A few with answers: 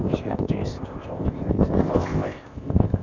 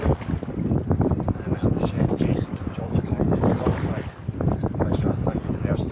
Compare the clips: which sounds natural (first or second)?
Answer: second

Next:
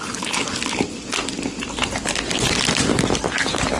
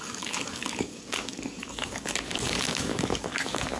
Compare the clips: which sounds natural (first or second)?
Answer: first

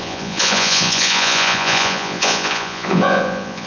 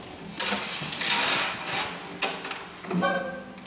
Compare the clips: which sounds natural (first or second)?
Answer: second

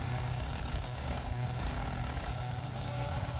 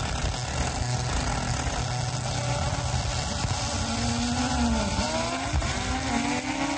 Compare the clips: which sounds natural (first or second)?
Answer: second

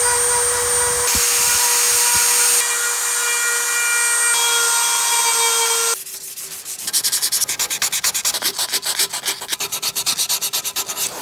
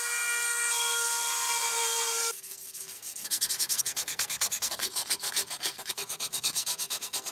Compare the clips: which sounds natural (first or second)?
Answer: first